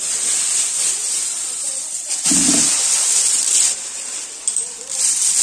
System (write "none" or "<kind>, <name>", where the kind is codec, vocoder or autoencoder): vocoder, BigVGAN v2